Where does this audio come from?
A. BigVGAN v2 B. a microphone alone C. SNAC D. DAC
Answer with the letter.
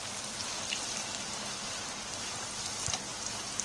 B